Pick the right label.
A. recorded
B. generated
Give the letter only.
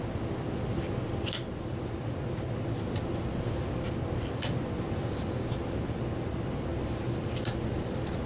A